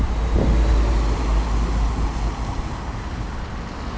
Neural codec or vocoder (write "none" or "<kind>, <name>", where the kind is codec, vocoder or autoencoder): none